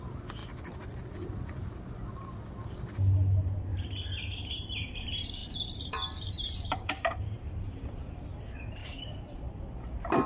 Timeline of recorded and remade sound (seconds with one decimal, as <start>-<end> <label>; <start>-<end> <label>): 0.0-3.7 recorded; 3.7-5.0 remade; 5.0-5.4 recorded; 5.4-8.1 remade; 8.1-8.8 recorded; 8.8-9.4 remade; 9.4-10.3 recorded